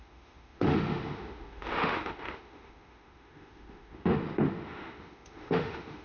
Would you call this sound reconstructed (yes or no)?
yes